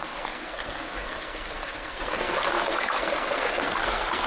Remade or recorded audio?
remade